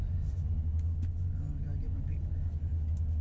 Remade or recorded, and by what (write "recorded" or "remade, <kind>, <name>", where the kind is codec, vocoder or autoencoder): recorded